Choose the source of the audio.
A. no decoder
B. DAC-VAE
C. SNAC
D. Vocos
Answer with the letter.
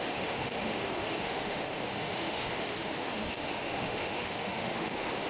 B